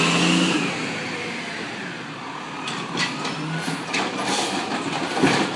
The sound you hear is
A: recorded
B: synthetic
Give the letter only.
A